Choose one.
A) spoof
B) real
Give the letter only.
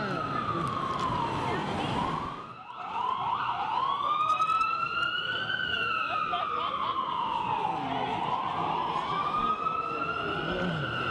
B